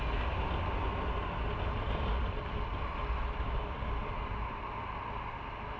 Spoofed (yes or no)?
no